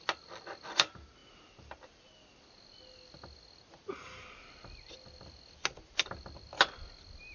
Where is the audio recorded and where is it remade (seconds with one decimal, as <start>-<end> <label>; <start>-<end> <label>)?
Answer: 0.0-7.3 recorded